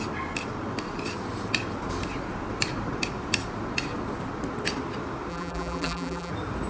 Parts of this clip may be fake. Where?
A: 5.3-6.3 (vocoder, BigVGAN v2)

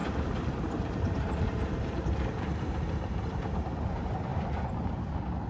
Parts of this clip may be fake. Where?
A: 0.0-3.3 (vocoder, BigVGAN v2)

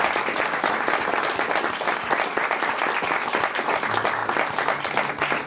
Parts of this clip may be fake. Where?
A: none

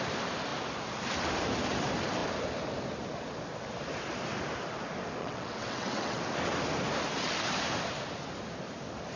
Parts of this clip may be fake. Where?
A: 5.2-6.2 (vocoder, WaveNeXt)

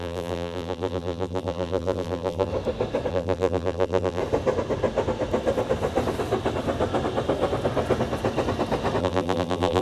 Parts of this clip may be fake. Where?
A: 0.0-2.5 (vocoder, BigVGAN v2); 3.1-4.2; 9.0-9.8

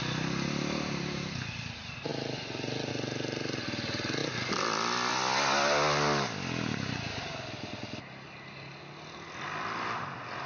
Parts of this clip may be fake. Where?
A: none

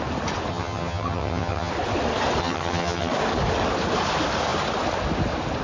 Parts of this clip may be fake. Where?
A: 0.5-1.7 (vocoder, HiFi-GAN); 2.4-3.1